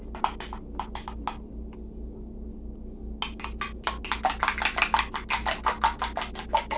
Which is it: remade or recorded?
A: recorded